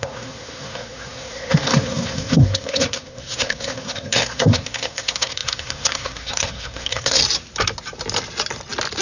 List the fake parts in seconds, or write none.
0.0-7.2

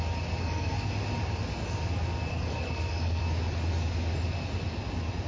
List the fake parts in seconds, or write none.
0.4-0.9; 2.3-3.2

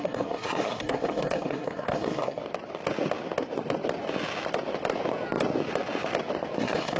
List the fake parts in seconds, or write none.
0.0-2.4; 6.6-7.0

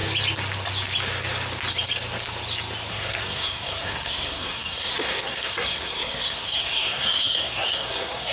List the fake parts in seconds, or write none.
2.9-8.3

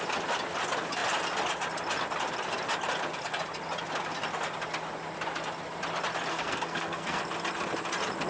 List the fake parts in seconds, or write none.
6.3-7.2

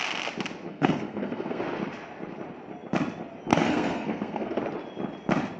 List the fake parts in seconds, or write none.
0.7-1.6; 3.5-4.6

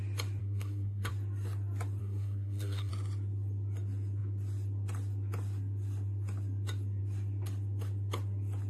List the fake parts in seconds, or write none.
0.4-1.1; 2.0-2.9